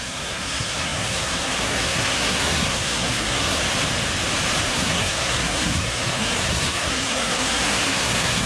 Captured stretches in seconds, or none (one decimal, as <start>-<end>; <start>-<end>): 3.6-4.6